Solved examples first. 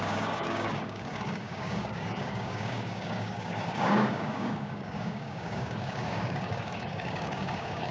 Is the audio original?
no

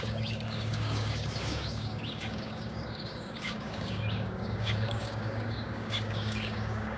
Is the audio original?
no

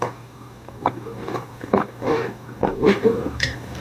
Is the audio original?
no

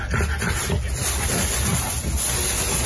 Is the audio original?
yes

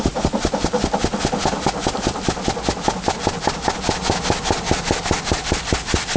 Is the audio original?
yes